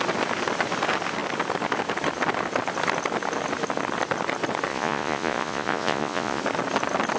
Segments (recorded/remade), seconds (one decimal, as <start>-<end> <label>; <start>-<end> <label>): 0.0-4.7 recorded; 4.7-6.4 remade; 6.4-7.2 recorded